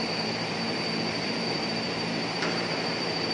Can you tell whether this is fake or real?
fake